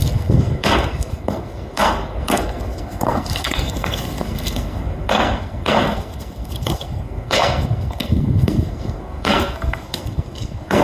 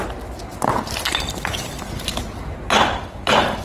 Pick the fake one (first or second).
first